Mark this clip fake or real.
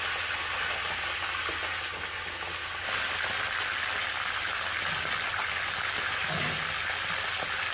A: real